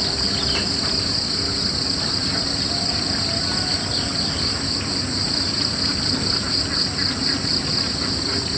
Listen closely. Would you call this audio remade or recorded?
recorded